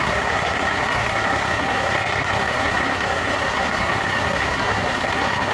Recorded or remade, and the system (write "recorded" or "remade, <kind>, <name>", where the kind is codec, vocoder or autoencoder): remade, codec, SNAC